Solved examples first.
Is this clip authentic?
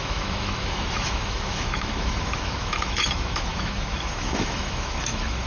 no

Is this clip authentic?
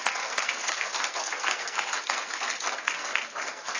no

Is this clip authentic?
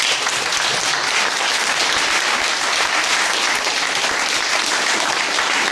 yes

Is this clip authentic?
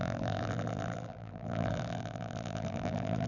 no